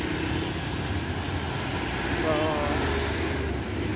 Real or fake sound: real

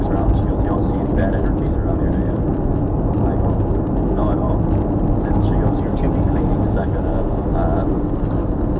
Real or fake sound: real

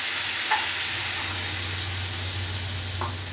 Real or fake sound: real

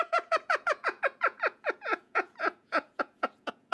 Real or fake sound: fake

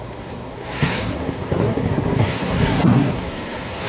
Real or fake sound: fake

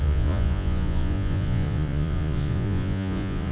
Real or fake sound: fake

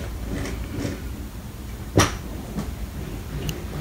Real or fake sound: real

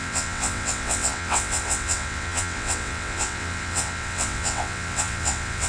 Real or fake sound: fake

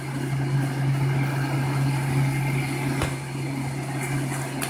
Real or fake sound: real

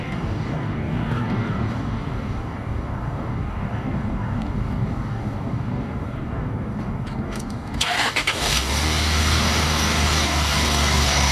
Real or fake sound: fake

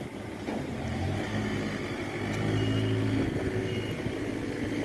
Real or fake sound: real